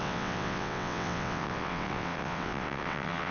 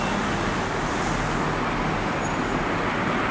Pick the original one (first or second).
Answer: second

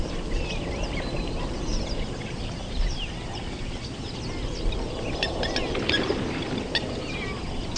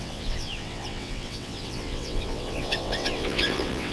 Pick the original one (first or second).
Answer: first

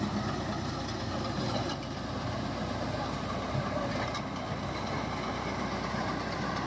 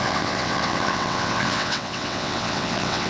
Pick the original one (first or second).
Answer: first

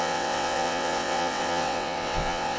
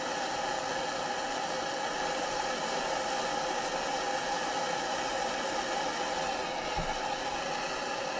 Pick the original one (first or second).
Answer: second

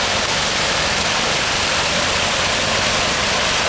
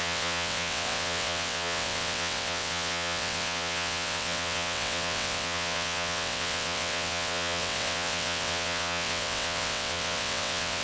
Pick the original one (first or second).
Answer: first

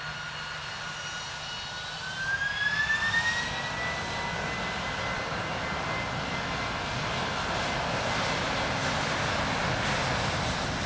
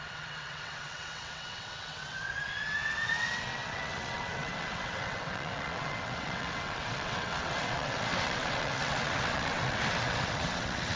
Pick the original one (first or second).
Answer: first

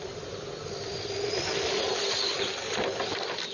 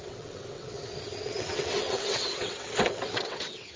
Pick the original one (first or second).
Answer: first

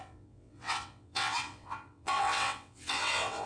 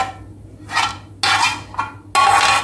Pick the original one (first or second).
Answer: second